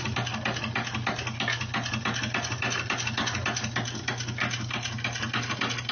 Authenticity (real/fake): real